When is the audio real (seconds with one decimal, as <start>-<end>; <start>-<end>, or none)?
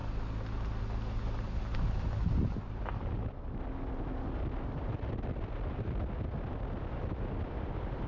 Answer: 0.0-8.1